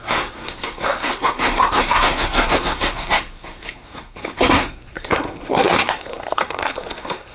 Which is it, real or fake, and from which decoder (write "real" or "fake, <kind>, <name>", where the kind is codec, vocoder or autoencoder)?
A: fake, codec, SNAC